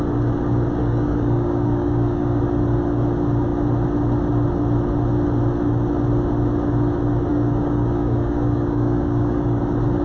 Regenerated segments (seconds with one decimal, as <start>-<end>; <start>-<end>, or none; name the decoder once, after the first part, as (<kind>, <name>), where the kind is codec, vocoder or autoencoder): 0.8-2.4 (codec, DAC); 7.3-9.6